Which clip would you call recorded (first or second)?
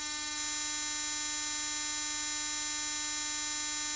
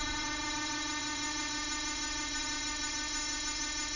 first